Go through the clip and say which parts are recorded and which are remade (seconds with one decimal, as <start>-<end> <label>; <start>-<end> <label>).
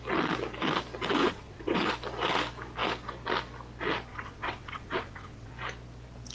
0.0-1.2 recorded; 1.2-1.9 remade; 1.9-4.1 recorded; 4.1-5.5 remade; 5.5-6.3 recorded